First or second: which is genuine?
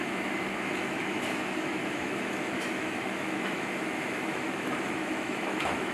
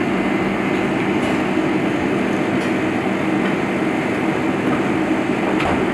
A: second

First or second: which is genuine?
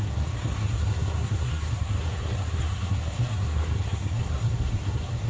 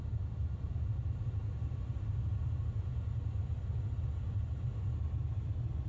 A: second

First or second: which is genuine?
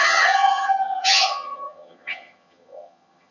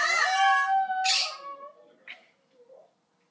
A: second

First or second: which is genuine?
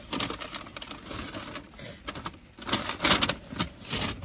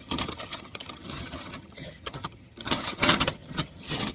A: first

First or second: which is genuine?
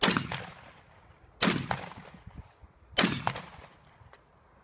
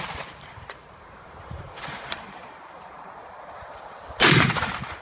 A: first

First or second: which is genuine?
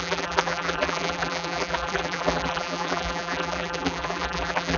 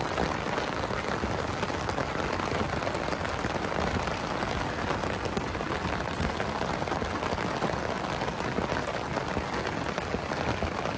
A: second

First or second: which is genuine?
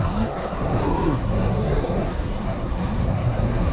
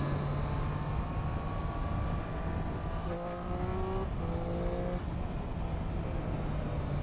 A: second